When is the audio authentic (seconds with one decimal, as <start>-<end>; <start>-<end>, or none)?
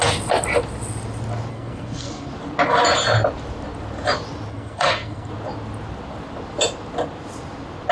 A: 0.0-1.5; 2.3-4.5; 5.3-7.9